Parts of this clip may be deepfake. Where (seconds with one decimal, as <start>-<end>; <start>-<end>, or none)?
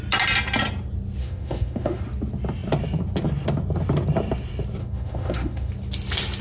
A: 1.2-2.0; 4.8-5.7